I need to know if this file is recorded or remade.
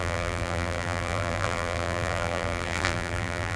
remade